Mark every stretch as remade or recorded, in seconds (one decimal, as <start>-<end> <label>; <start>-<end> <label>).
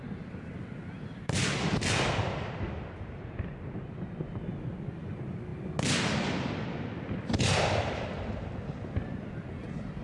0.0-10.0 recorded